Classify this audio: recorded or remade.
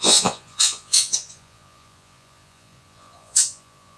remade